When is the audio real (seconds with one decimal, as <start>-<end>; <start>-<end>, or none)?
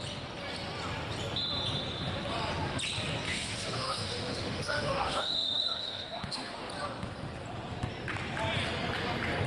0.0-3.3; 6.7-9.5